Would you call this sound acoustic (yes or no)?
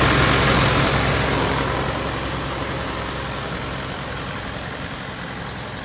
yes